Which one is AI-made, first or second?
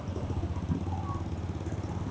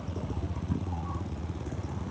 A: second